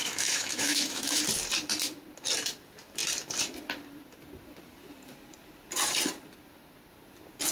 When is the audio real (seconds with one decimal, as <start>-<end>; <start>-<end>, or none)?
1.2-7.5